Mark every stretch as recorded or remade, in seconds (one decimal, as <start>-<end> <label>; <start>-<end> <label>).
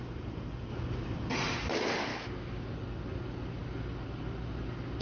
0.0-2.1 recorded; 2.1-2.7 remade; 2.7-5.0 recorded